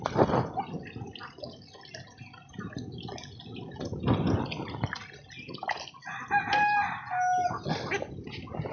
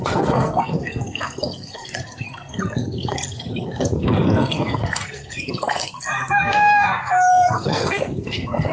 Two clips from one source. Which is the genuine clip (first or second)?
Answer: first